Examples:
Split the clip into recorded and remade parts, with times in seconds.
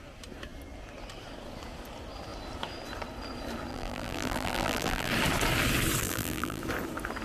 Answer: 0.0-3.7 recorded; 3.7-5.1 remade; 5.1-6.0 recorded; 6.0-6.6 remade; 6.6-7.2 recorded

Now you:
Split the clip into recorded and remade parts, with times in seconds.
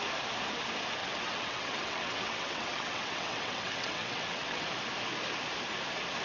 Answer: 0.0-1.0 recorded; 1.0-4.7 remade; 4.7-6.2 recorded